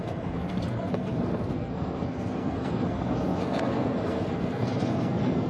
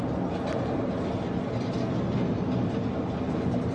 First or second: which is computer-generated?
first